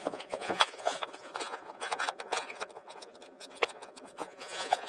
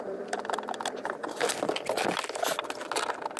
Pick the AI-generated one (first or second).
first